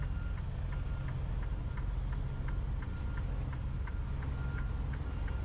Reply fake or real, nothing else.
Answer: real